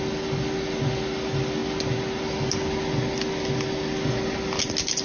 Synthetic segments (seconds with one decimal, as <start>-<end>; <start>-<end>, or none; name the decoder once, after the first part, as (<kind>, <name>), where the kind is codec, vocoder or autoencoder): none